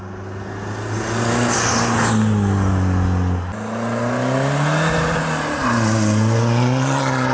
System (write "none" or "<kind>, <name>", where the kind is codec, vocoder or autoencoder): none